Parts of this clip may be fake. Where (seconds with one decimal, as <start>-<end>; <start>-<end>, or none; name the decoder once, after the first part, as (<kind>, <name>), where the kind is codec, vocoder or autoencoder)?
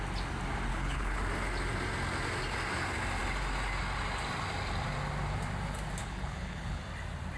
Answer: 0.7-1.2 (codec, HILCodec); 6.0-6.8